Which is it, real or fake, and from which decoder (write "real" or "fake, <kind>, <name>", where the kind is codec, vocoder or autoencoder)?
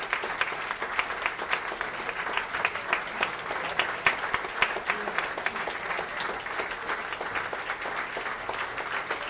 real